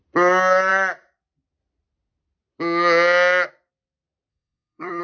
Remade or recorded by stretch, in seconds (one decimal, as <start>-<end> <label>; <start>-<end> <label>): 0.0-4.3 recorded; 4.3-5.0 remade